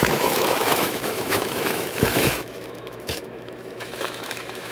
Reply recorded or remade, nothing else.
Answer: remade